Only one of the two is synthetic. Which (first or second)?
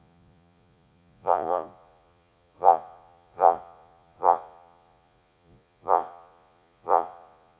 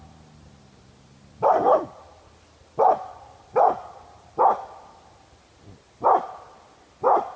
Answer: first